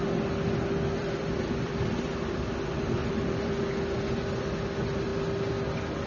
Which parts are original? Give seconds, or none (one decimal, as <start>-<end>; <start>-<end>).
0.0-1.0; 1.9-3.0; 3.6-6.1